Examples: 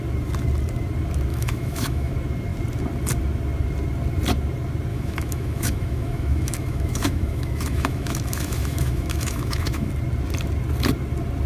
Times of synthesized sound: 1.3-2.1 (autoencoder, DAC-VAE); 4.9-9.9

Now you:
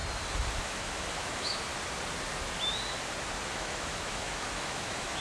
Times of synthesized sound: 0.6-1.7 (autoencoder, DAC-VAE); 3.5-5.2